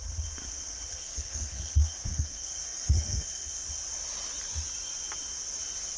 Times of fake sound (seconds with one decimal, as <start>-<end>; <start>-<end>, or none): 0.9-1.7; 2.1-3.7